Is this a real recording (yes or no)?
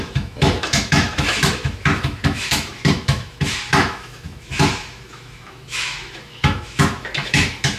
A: no